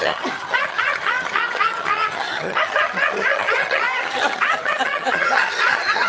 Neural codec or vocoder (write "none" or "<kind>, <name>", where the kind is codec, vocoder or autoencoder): vocoder, HiFi-GAN